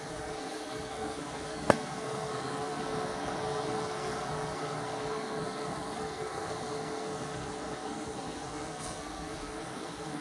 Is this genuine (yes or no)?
no